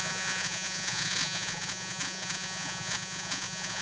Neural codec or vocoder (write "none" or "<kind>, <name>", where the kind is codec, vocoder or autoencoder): vocoder, Vocos